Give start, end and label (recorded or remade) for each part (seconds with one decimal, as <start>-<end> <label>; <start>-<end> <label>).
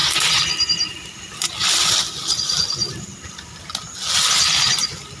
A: 0.0-1.5 remade; 1.5-2.8 recorded; 2.8-3.7 remade; 3.7-5.2 recorded